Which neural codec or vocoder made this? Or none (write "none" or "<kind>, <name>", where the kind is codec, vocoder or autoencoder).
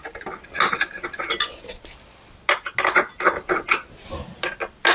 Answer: none